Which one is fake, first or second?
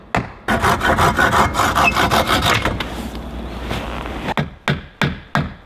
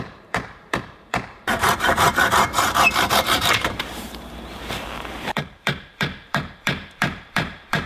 second